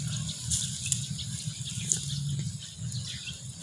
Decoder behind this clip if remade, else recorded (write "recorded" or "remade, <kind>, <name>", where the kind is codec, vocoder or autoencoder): recorded